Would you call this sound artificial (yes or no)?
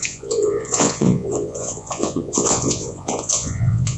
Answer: yes